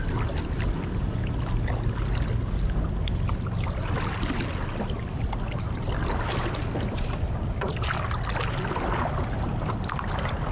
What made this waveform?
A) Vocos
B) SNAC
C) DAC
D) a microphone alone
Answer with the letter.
D